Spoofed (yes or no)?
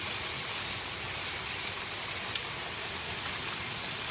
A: no